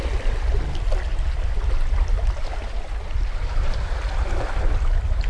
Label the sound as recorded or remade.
recorded